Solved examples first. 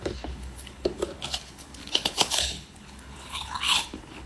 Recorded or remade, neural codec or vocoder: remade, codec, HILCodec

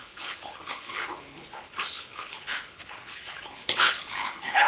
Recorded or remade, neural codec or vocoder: remade, codec, HILCodec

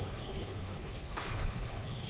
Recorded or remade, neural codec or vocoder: remade, codec, HILCodec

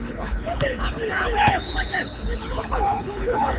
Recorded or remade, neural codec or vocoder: remade, codec, HILCodec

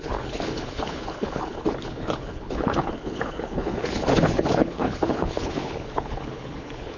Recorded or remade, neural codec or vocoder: remade, codec, HILCodec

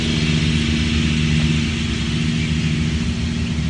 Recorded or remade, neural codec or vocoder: recorded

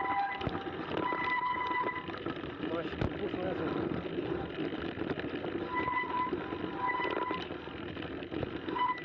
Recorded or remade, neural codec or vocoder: recorded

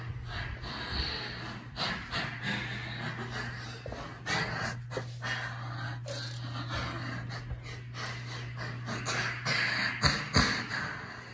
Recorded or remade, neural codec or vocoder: recorded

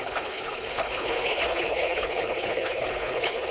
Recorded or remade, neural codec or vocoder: remade, codec, HILCodec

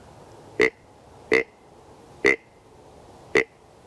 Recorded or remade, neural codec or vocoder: recorded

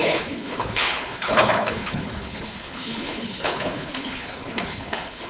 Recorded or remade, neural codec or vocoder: remade, codec, HILCodec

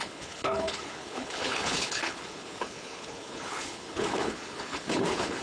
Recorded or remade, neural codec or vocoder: remade, codec, HILCodec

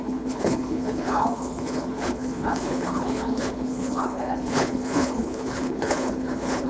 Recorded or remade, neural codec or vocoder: remade, codec, HILCodec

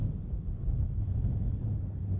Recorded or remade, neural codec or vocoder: recorded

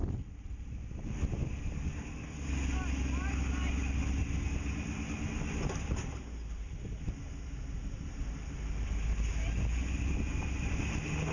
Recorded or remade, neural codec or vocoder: recorded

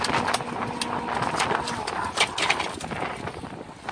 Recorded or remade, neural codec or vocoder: recorded